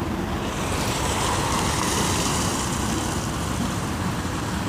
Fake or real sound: fake